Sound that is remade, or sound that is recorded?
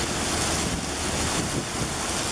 recorded